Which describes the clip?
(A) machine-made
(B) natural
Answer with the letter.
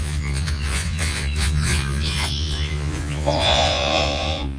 A